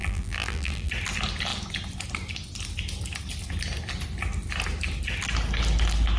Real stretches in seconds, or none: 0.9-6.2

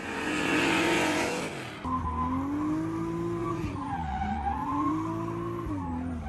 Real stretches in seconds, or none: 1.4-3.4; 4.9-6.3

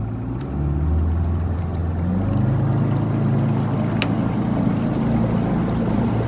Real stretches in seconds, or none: 0.0-6.3